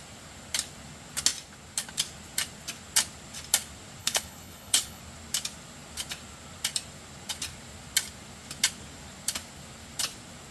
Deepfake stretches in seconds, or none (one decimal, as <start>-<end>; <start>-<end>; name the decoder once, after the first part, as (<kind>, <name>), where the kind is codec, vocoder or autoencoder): 4.0-5.0 (codec, HILCodec)